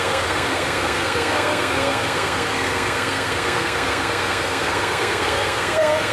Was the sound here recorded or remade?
remade